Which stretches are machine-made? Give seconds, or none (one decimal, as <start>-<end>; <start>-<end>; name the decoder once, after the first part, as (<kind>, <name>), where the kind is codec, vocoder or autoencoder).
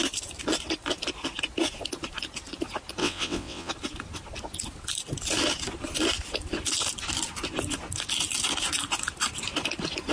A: 3.0-3.7 (vocoder, WaveNeXt)